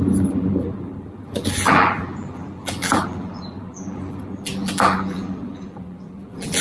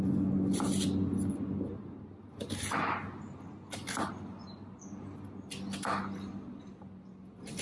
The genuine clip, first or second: second